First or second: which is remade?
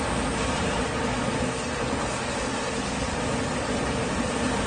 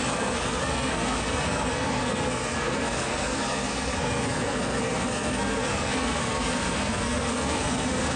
second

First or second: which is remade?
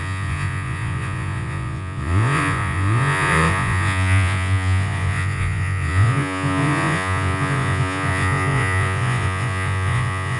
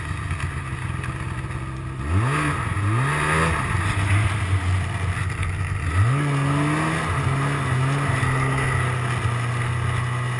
first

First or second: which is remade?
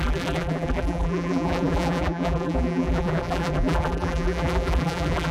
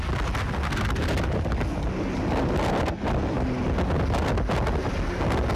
first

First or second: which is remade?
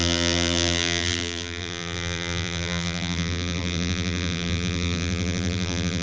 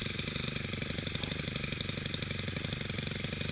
first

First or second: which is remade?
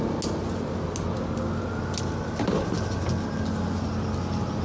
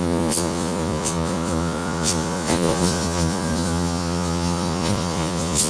second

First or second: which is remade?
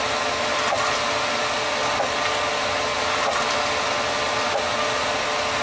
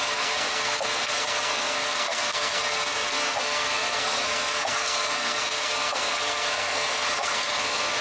second